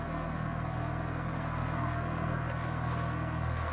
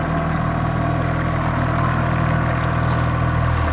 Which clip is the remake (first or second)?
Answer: first